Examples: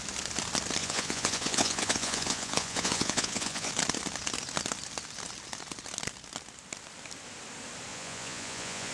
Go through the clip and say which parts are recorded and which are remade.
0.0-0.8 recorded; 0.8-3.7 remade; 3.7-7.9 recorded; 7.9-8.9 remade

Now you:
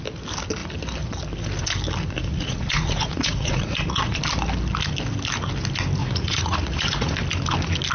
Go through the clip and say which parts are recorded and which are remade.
0.0-2.3 recorded; 2.3-4.2 remade; 4.2-6.0 recorded; 6.0-7.1 remade; 7.1-7.9 recorded

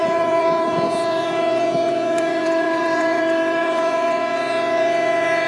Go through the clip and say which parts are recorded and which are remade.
0.0-5.5 remade

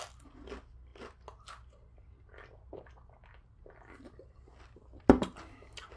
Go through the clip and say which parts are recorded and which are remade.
0.0-6.0 recorded

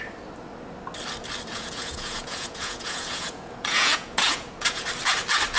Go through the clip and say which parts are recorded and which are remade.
0.0-1.5 recorded; 1.5-4.9 remade; 4.9-5.6 recorded

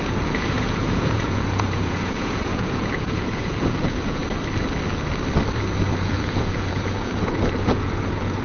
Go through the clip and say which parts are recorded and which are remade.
0.0-4.2 remade; 4.2-6.0 recorded; 6.0-8.4 remade

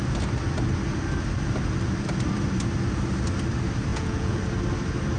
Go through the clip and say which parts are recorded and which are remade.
0.0-3.9 recorded; 3.9-4.4 remade; 4.4-5.2 recorded